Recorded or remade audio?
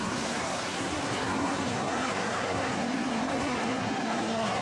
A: remade